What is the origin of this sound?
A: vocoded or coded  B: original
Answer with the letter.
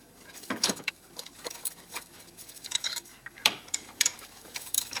A